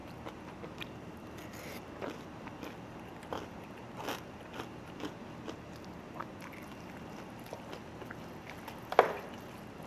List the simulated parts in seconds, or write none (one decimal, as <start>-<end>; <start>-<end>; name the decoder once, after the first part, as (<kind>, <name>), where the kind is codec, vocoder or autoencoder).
none